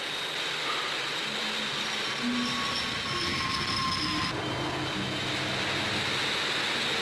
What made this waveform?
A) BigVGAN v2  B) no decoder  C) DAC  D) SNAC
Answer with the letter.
B